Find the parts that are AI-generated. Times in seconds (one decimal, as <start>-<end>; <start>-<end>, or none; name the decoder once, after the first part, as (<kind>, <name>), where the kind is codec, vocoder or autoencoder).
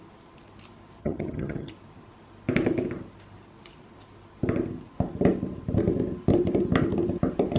1.0-1.7 (vocoder, HiFi-GAN)